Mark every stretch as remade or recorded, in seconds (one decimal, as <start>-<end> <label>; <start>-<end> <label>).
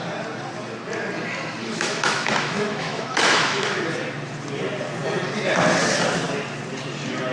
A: 0.0-1.6 recorded; 1.6-3.8 remade; 3.8-7.3 recorded